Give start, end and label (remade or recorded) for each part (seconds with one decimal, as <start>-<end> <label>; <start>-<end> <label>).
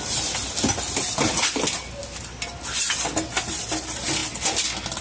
0.0-5.0 recorded